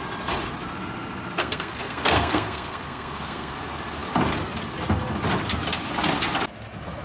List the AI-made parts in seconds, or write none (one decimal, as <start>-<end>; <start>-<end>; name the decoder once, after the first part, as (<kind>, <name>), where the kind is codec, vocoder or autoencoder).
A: 1.4-3.5 (codec, SNAC)